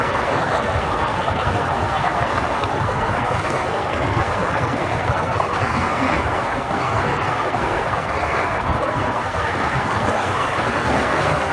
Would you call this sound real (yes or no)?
no